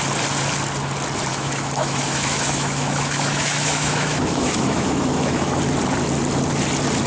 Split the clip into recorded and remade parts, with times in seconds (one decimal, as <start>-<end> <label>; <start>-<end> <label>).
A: 0.0-1.3 recorded; 1.3-5.6 remade; 5.6-7.1 recorded